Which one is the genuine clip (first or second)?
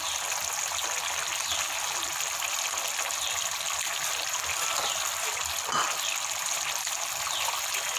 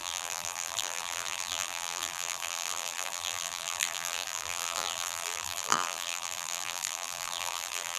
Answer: first